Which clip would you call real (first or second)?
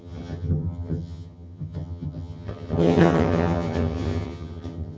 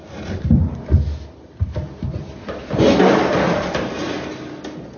second